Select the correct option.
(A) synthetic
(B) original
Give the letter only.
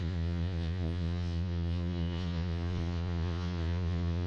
A